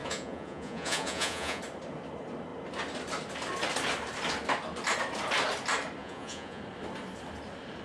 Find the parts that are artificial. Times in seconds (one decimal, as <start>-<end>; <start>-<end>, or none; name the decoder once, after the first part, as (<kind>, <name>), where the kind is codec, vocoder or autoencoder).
0.0-1.6 (vocoder, Vocos); 6.0-6.6